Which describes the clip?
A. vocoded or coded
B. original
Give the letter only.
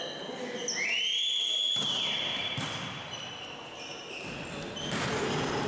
B